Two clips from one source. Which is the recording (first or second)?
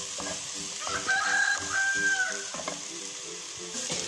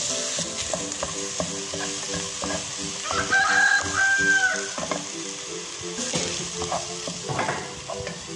second